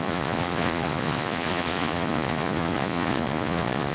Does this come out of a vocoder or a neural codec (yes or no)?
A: yes